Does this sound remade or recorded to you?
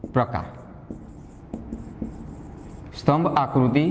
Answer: recorded